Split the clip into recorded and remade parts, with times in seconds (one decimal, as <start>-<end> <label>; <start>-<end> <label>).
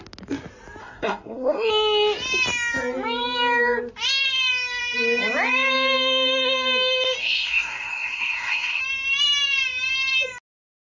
0.0-0.8 recorded; 0.8-1.7 remade; 1.7-7.2 recorded; 7.2-8.8 remade; 8.8-10.9 recorded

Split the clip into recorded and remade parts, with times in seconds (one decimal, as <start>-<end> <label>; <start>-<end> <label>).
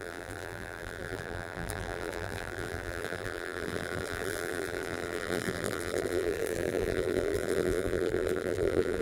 0.0-9.0 remade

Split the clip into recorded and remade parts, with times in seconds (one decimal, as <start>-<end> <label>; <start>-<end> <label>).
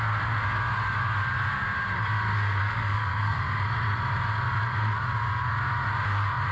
0.0-2.6 recorded; 2.6-3.4 remade; 3.4-6.5 recorded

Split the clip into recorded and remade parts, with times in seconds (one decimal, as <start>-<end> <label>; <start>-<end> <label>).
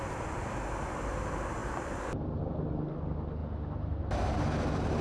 0.0-5.0 recorded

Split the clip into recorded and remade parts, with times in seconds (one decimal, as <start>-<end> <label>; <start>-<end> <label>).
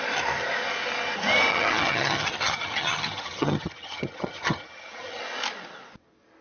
0.0-1.5 recorded; 1.5-5.2 remade; 5.2-6.4 recorded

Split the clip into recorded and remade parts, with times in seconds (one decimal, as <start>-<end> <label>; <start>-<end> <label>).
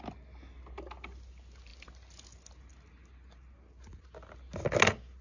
0.0-5.2 recorded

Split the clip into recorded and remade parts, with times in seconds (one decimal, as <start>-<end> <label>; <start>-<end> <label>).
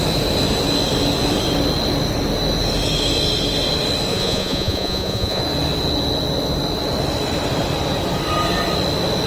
0.0-4.1 recorded; 4.1-5.4 remade; 5.4-9.3 recorded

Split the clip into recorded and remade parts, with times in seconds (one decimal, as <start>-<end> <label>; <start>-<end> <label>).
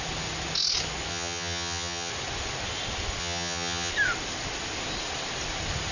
0.0-1.1 recorded; 1.1-2.1 remade; 2.1-3.2 recorded; 3.2-3.9 remade; 3.9-5.9 recorded